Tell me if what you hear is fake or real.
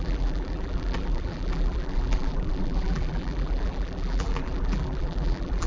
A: fake